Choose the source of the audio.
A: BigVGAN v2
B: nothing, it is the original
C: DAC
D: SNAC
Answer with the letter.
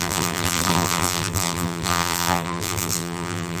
A